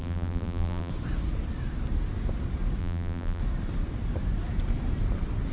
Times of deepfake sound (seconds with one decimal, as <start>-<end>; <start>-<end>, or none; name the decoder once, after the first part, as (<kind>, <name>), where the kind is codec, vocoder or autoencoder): 0.0-0.9 (vocoder, BigVGAN v2); 2.8-3.4